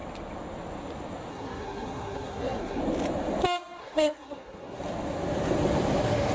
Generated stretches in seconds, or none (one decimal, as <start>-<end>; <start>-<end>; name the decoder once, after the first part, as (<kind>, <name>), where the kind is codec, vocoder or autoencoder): 1.3-2.8 (codec, SNAC); 3.8-4.8

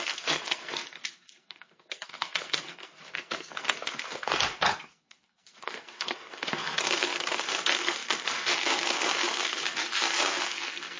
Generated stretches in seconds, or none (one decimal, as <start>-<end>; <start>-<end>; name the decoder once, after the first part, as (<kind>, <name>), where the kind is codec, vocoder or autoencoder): 0.0-11.0 (codec, SNAC)